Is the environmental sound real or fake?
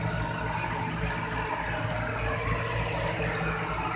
real